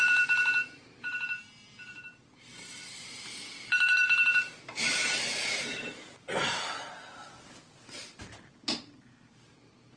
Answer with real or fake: fake